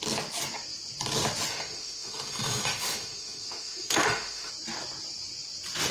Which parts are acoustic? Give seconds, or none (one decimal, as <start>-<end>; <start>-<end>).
0.0-1.5; 4.5-5.9